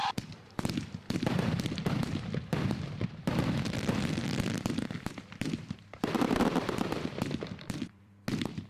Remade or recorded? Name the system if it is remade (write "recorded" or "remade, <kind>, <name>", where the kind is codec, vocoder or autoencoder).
remade, vocoder, BigVGAN v2